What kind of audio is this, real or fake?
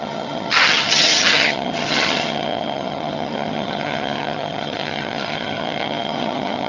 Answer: fake